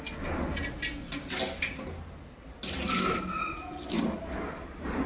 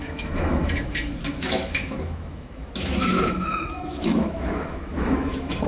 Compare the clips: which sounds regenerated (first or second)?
second